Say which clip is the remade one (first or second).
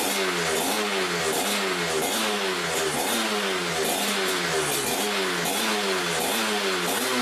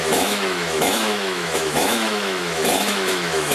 second